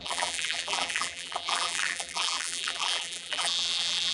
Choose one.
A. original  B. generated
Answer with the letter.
B